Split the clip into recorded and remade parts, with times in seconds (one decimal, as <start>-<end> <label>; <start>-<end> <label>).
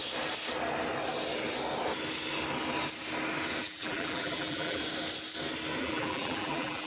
0.0-3.6 recorded; 3.6-4.8 remade; 4.8-5.8 recorded; 5.8-6.9 remade